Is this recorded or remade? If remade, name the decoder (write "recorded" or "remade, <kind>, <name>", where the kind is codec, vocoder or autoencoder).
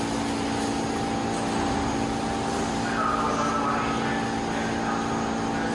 recorded